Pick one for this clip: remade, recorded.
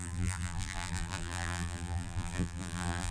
remade